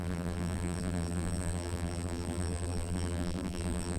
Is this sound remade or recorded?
remade